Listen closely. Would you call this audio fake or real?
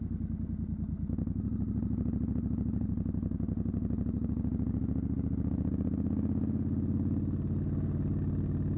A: real